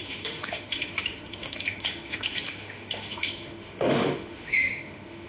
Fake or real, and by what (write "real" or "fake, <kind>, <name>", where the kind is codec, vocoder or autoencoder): fake, autoencoder, DAC-VAE